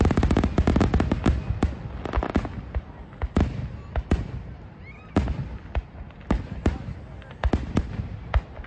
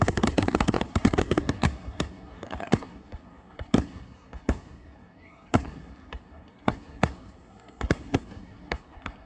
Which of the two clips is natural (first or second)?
first